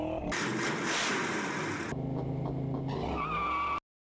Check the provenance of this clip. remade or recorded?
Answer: recorded